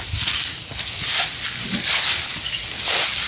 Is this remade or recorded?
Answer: recorded